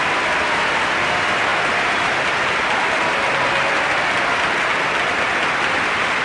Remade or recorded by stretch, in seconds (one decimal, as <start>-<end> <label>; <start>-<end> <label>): 0.0-6.2 recorded